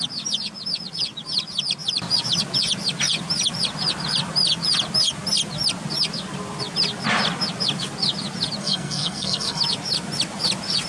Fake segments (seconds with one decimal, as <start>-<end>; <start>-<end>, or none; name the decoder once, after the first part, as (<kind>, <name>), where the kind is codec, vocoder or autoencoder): 8.6-9.6 (codec, SNAC)